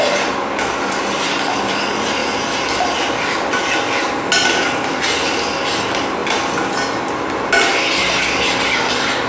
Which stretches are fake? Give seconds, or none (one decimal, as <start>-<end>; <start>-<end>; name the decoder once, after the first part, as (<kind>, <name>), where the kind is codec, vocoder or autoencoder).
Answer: none